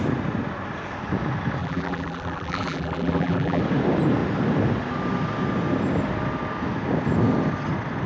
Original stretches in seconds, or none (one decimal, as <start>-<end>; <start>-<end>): 0.0-1.6; 3.6-8.1